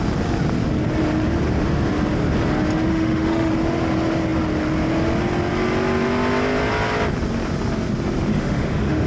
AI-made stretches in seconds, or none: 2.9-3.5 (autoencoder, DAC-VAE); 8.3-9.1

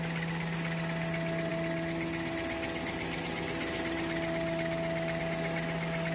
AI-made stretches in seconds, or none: none

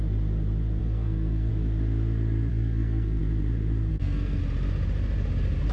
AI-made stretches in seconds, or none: 0.8-1.5 (codec, SNAC); 2.5-3.2; 3.9-4.4